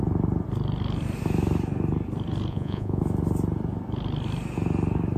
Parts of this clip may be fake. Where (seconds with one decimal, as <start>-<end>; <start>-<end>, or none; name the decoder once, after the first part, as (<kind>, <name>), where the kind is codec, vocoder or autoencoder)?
2.5-3.0 (vocoder, Vocos)